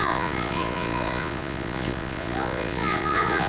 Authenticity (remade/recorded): remade